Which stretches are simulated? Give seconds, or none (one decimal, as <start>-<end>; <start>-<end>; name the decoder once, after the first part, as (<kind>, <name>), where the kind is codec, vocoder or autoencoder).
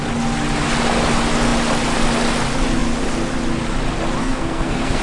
4.2-5.0 (codec, SNAC)